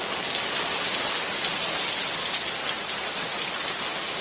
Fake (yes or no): no